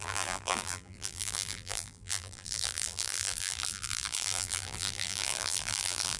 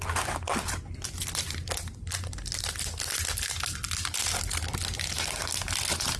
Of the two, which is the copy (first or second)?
first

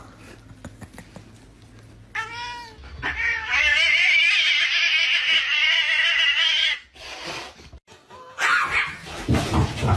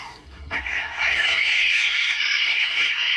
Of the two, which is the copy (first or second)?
second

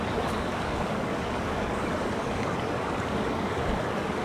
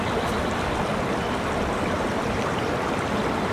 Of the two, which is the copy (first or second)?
first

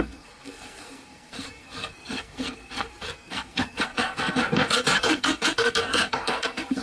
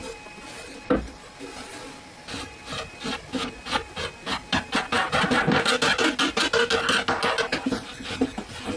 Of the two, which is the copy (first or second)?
first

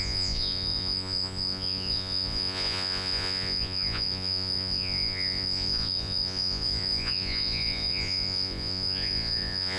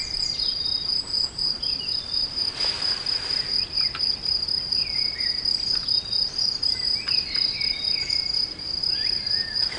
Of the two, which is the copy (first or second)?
first